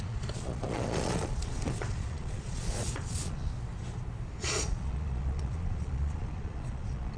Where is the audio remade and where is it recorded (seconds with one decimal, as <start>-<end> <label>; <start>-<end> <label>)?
0.0-3.5 remade; 3.5-4.4 recorded; 4.4-7.2 remade